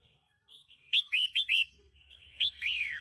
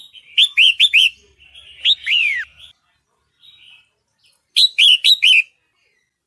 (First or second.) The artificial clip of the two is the first